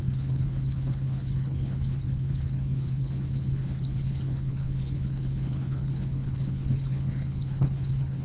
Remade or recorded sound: remade